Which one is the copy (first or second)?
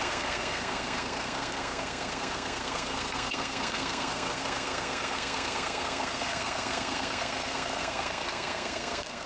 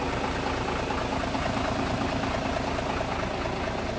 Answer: first